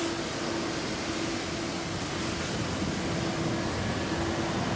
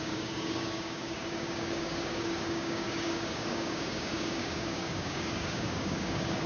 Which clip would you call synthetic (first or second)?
second